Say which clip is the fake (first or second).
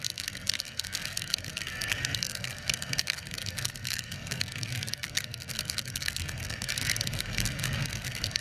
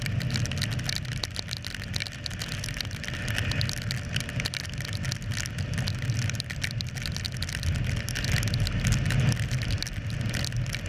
first